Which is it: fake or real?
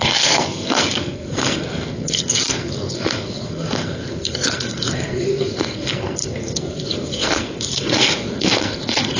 fake